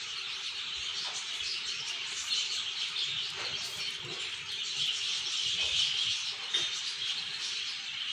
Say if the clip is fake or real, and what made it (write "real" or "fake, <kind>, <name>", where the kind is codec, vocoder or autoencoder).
real